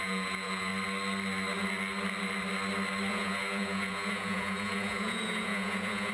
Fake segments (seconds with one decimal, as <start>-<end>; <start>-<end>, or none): 0.0-0.7; 3.1-6.1